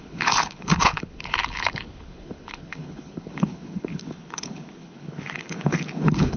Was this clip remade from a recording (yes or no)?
yes